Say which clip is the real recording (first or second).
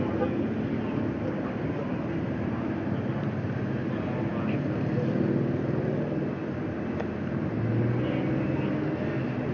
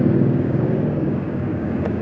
first